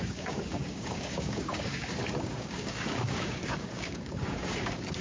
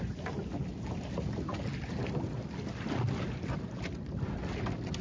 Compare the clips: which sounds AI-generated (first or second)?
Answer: first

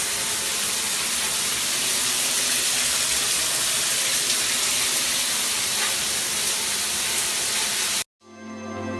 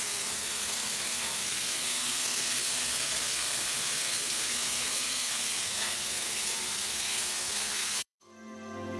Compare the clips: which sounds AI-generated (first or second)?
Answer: second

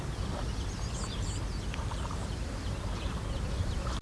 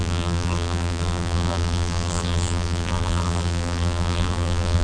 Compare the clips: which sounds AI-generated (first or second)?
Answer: second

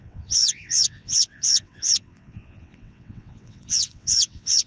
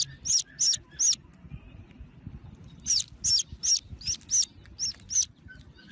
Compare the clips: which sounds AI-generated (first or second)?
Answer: first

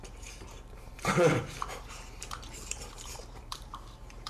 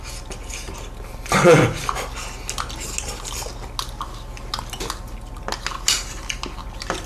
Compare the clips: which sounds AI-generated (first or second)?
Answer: first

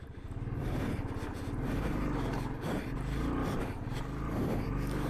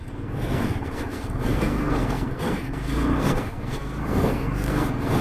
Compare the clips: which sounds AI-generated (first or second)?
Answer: second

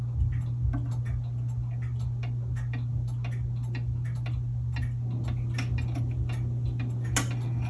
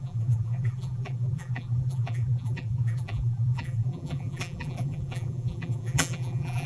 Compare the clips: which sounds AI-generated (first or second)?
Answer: second